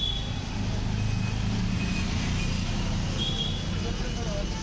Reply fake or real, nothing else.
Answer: real